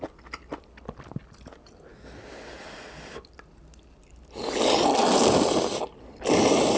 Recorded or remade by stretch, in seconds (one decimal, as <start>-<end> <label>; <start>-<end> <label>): 0.0-6.8 recorded